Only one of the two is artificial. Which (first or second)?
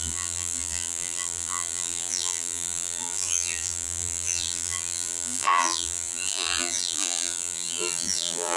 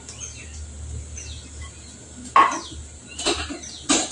first